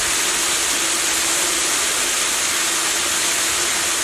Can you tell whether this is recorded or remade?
recorded